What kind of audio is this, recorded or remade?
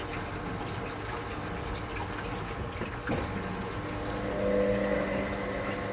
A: recorded